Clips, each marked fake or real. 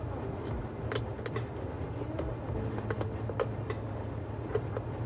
real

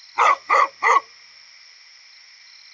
real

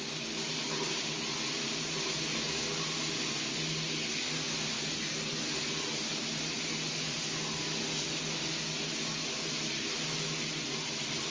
real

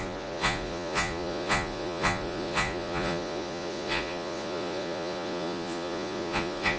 fake